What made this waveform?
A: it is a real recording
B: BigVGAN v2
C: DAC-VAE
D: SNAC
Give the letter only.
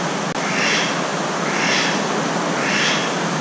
A